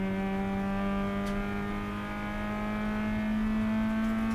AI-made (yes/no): no